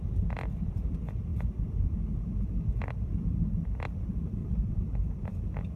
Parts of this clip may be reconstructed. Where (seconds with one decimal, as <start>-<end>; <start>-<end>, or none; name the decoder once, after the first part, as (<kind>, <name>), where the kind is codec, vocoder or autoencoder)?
4.4-5.8 (vocoder, BigVGAN v2)